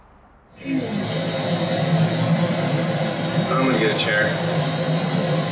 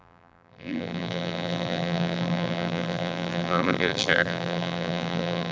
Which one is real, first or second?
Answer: first